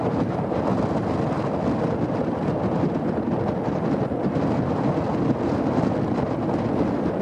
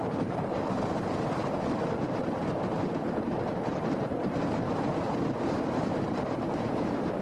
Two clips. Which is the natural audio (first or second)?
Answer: first